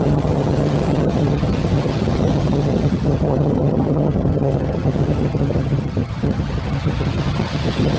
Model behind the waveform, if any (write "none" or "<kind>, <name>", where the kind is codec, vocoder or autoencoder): vocoder, HiFi-GAN